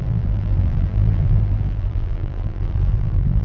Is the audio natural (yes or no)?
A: no